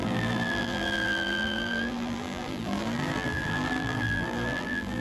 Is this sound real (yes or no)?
no